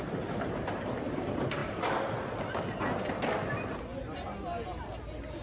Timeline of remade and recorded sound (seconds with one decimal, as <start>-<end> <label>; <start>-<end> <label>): 0.0-5.4 recorded